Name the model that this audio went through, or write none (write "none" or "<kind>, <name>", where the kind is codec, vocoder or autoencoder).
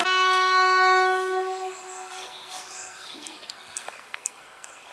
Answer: codec, SNAC